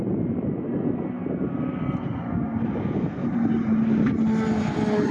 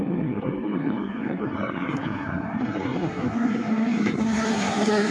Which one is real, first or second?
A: first